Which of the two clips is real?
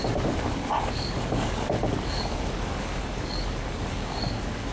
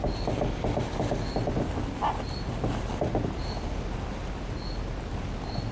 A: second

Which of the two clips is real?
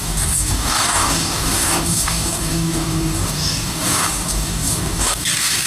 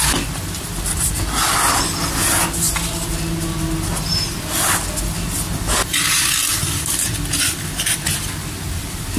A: second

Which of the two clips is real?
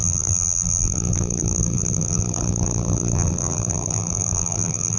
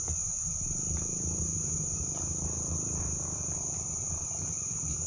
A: second